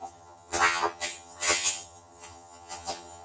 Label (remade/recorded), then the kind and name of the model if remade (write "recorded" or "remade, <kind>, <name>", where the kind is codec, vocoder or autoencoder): remade, vocoder, HiFi-GAN